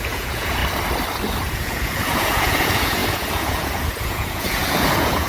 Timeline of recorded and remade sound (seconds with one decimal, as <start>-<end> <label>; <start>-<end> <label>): 0.0-0.6 remade; 0.6-1.4 recorded; 1.4-5.3 remade